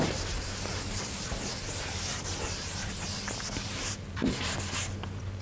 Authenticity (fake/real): fake